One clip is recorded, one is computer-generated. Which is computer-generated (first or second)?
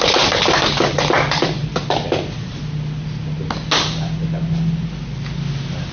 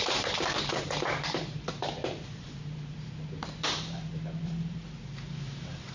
second